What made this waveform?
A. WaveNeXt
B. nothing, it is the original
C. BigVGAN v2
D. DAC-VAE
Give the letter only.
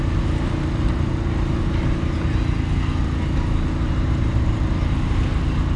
B